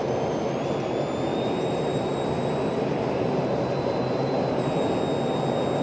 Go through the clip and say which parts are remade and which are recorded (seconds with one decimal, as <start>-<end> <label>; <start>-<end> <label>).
0.0-1.3 recorded; 1.3-4.8 remade; 4.8-5.8 recorded